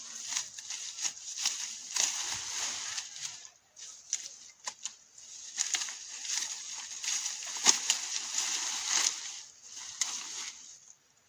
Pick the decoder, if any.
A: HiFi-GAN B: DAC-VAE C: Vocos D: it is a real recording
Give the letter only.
D